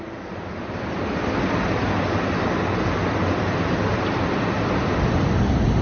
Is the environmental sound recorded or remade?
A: recorded